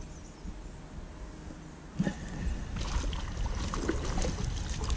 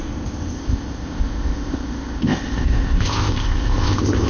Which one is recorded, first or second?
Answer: first